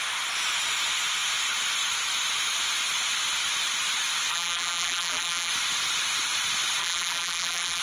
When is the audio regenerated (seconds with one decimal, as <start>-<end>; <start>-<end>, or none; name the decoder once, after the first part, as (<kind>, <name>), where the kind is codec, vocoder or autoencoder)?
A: 4.3-5.5 (vocoder, BigVGAN v2); 6.8-7.8